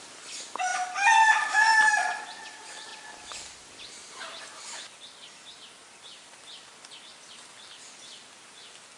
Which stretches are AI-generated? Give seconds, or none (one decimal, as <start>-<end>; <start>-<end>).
none